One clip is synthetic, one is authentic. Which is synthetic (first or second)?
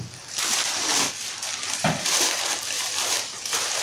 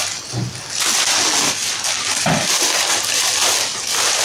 first